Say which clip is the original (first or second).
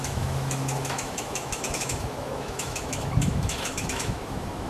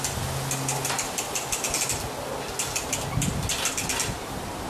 second